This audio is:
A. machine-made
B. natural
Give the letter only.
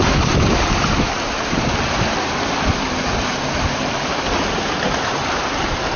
B